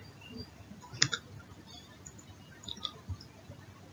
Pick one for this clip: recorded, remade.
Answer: recorded